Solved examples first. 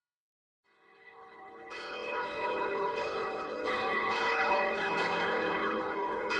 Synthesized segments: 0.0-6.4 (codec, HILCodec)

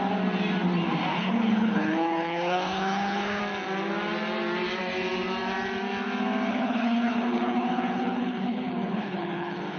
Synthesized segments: 1.1-3.4 (codec, HILCodec); 6.5-9.8

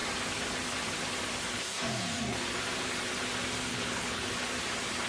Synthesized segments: 3.7-4.3 (codec, HILCodec)

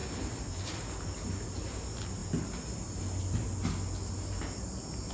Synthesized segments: none